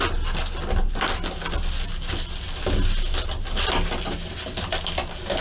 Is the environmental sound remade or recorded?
recorded